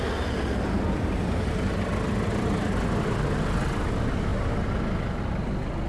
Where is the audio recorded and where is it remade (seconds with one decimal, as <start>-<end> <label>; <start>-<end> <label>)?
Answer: 0.0-5.9 recorded